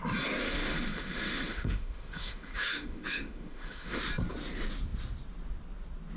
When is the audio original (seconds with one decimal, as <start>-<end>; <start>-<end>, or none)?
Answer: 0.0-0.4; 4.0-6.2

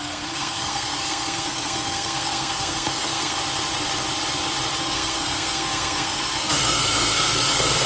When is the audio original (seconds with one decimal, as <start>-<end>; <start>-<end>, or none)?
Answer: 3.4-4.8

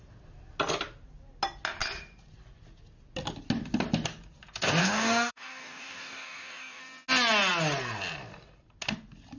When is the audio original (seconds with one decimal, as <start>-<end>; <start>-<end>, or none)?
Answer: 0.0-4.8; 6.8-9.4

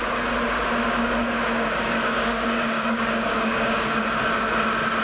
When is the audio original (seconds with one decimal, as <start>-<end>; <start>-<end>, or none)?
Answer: 0.0-1.0; 4.0-5.0